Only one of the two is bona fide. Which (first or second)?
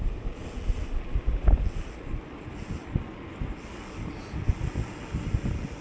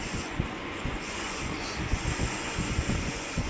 first